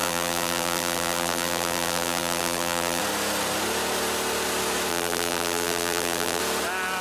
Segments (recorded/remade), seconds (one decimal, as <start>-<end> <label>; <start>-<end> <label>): 0.0-3.0 remade; 3.0-4.9 recorded; 4.9-6.4 remade; 6.4-7.0 recorded